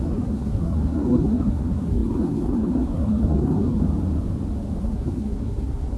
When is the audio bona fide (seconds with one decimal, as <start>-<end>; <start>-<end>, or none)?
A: 3.8-4.8